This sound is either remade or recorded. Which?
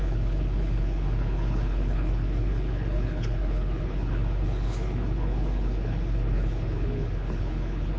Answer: remade